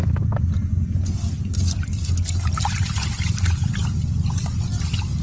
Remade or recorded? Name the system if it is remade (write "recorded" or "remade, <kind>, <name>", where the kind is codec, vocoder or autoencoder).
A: recorded